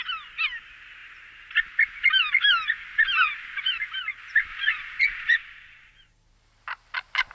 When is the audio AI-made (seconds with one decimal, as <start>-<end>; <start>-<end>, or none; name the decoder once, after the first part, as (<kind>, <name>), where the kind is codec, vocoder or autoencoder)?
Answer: 4.5-5.9 (vocoder, Vocos)